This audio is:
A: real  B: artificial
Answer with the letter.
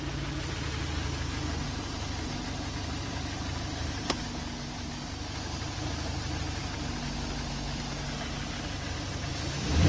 A